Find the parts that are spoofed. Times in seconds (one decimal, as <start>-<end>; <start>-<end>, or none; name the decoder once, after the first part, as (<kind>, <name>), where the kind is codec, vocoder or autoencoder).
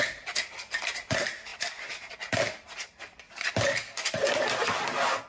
none